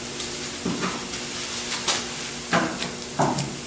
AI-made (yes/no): no